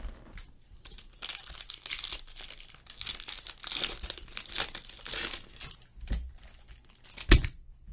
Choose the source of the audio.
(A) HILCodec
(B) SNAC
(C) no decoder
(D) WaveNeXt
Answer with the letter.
C